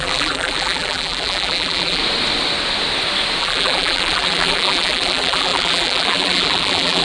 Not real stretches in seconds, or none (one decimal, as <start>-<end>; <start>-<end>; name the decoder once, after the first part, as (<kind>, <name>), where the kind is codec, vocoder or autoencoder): 0.0-2.0 (vocoder, BigVGAN v2); 3.4-7.0